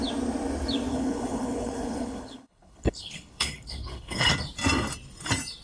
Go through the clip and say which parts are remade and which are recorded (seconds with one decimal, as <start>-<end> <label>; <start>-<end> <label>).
0.0-0.9 recorded; 0.9-4.3 remade; 4.3-5.6 recorded